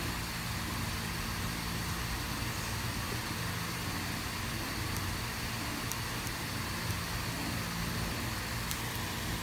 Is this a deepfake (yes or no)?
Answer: no